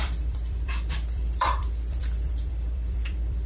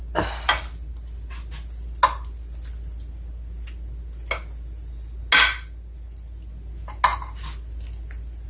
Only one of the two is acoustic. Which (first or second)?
second